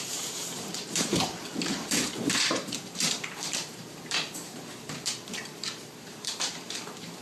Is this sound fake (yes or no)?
yes